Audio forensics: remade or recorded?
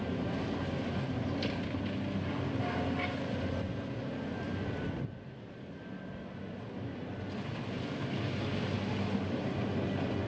recorded